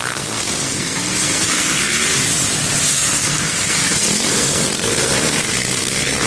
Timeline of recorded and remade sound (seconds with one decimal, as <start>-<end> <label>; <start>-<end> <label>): 0.0-2.1 remade; 2.1-2.9 recorded; 2.9-6.3 remade